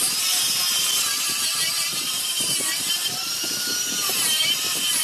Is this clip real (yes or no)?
no